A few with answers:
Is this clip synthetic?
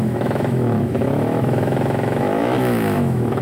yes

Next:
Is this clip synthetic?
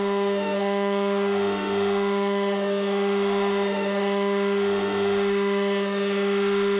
yes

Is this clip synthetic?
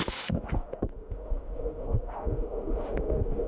yes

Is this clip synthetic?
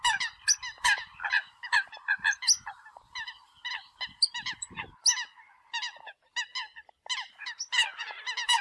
no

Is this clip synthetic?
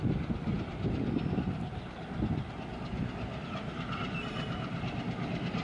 no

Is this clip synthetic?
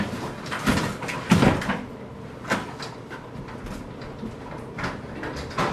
no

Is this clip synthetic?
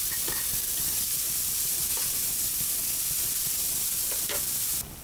no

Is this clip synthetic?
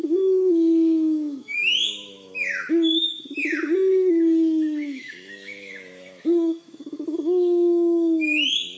yes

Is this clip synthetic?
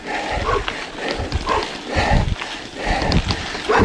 no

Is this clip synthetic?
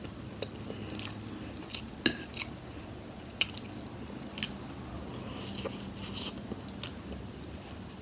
no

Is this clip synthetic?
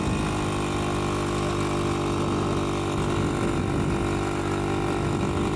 no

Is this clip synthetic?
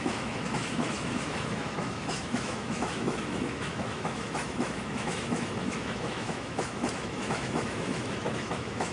yes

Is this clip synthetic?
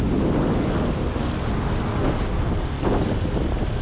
no